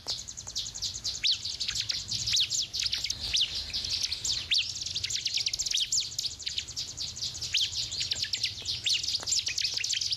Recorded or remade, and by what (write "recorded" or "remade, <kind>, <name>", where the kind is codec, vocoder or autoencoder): recorded